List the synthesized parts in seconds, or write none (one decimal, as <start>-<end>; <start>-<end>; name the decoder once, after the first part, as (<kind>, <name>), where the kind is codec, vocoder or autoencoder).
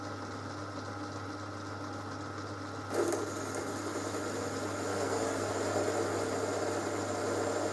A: 4.9-5.5 (codec, SNAC)